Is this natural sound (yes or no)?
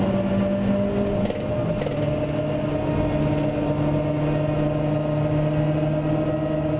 yes